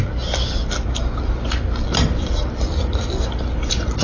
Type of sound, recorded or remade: recorded